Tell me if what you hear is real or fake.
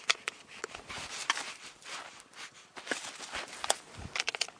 real